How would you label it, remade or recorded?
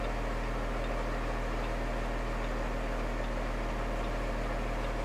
recorded